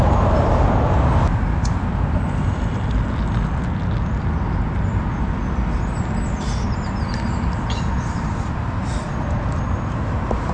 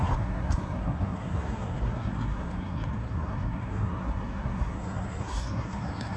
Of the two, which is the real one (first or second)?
first